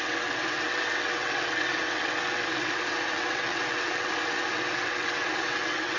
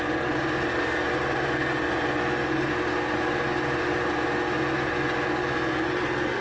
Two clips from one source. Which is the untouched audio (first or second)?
second